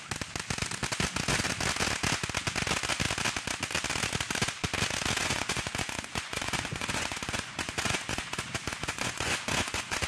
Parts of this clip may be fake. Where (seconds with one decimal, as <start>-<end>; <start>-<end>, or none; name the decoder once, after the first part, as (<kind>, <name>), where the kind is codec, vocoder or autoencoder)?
5.2-10.1 (vocoder, Vocos)